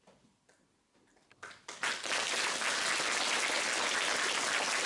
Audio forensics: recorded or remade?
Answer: recorded